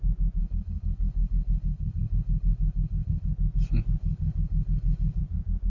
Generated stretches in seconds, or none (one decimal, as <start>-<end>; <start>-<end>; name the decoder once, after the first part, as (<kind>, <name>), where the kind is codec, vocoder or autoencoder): 0.4-3.3 (codec, HILCodec); 4.0-5.2